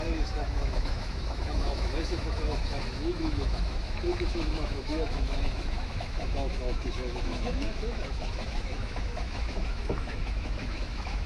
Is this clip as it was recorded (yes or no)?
no